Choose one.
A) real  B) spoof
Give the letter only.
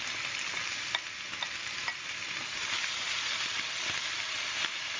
A